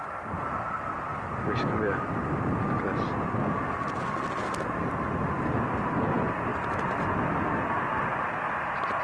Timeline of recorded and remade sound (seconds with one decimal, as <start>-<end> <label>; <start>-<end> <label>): 0.0-9.0 recorded